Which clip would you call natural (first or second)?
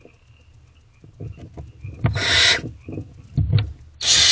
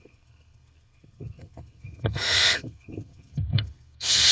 first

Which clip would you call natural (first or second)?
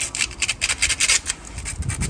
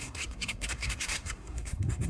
first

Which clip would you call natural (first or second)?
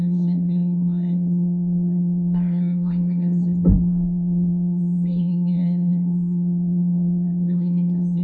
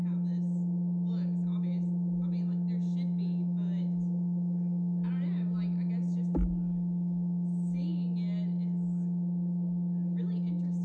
second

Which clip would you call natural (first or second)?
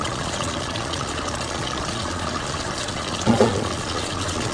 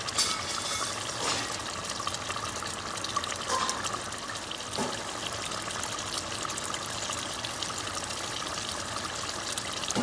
second